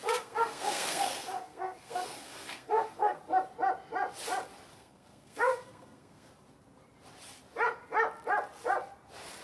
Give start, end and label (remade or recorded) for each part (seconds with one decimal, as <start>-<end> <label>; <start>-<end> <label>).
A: 0.0-3.2 remade; 3.2-4.7 recorded; 4.7-6.3 remade; 6.3-9.4 recorded